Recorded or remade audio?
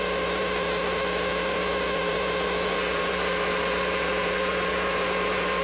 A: remade